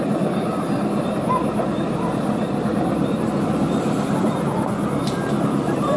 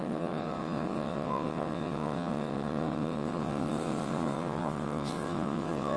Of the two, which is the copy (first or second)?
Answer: second